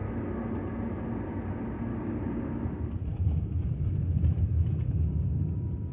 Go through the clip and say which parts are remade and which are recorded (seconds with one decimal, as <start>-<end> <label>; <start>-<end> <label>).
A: 0.0-1.9 recorded; 1.9-2.5 remade; 2.5-5.9 recorded